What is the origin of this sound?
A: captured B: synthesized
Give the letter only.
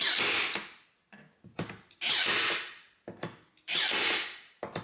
A